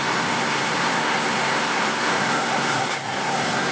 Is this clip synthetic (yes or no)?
yes